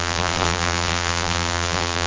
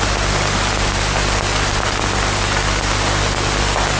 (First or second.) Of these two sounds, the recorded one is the second